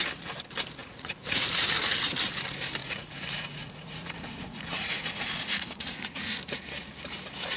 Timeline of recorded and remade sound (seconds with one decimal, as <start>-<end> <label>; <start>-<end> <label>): 0.0-0.8 recorded; 0.8-2.1 remade; 2.1-2.8 recorded; 2.8-6.4 remade; 6.4-7.6 recorded